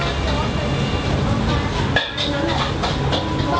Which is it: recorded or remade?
recorded